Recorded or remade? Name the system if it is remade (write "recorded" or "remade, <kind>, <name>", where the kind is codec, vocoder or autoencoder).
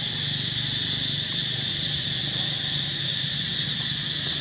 recorded